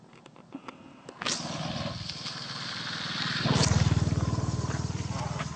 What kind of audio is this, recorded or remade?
recorded